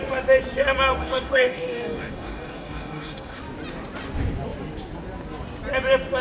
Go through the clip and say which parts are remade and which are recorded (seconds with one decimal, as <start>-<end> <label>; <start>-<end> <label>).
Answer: 0.0-1.0 recorded; 1.0-3.4 remade; 3.4-6.2 recorded

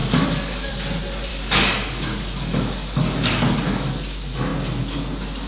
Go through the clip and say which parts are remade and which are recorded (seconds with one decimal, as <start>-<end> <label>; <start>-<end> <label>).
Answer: 0.0-0.7 remade; 0.7-1.3 recorded; 1.3-3.9 remade; 3.9-5.5 recorded